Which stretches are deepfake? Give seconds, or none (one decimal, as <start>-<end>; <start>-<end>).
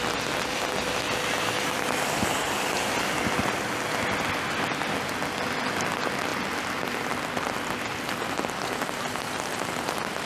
none